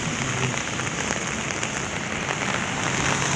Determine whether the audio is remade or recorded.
recorded